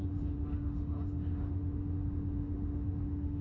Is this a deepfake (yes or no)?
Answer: yes